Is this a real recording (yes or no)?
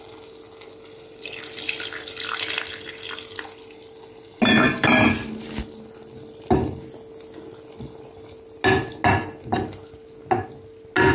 yes